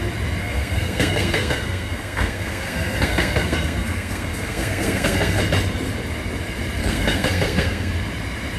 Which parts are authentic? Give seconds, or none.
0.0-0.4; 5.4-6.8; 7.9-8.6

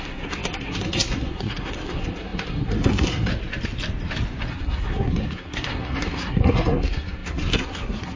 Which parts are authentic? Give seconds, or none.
3.3-4.5

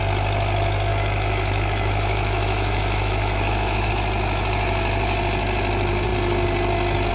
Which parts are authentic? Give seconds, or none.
0.0-0.9; 3.9-7.1

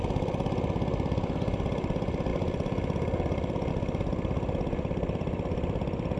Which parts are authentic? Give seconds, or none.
0.0-6.2

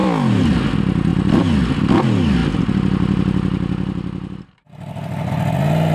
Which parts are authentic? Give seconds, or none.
0.0-5.9

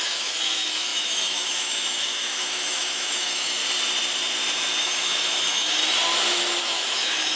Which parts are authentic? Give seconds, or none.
3.6-4.8; 5.8-6.6

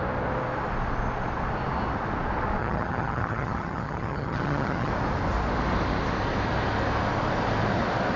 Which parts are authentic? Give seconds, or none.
0.0-2.6; 4.9-8.2